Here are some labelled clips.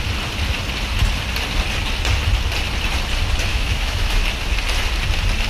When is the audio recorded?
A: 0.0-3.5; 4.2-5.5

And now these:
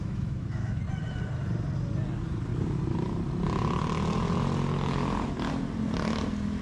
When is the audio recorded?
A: 0.8-6.6